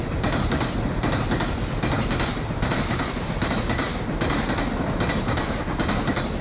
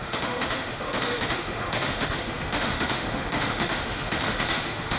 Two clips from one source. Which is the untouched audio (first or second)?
first